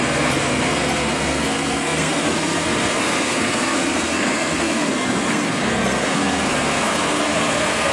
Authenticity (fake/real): fake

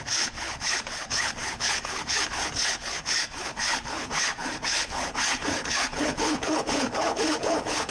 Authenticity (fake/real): fake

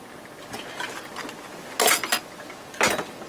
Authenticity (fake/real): real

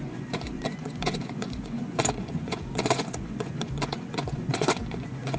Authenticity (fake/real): fake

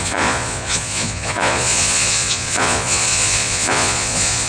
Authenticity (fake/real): fake